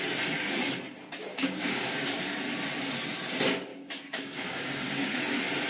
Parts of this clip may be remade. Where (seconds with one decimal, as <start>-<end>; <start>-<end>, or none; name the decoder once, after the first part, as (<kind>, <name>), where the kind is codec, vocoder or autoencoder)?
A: 1.3-2.2 (codec, DAC); 3.7-5.2

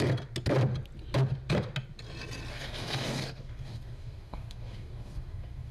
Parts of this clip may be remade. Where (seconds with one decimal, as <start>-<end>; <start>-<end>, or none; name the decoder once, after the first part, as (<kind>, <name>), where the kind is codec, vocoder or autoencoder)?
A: 2.5-5.7 (codec, DAC)

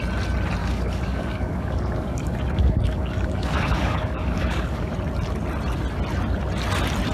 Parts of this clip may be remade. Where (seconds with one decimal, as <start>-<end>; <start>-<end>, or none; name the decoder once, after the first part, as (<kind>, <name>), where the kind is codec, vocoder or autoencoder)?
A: 0.6-4.9 (codec, DAC)

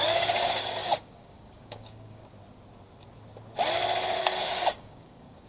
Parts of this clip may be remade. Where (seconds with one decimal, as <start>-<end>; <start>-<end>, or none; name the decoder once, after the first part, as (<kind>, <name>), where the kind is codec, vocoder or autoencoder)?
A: 0.0-2.2 (codec, DAC); 4.2-5.5

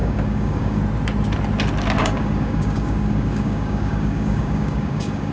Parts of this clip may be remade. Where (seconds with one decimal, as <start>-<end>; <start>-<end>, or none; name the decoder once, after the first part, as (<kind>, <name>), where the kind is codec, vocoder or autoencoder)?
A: 0.0-0.8 (codec, DAC); 2.0-5.3

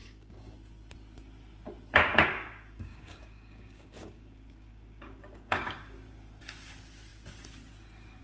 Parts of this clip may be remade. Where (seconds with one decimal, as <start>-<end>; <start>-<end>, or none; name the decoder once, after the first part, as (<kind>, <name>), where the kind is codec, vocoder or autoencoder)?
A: 0.0-0.5 (codec, DAC); 2.1-6.4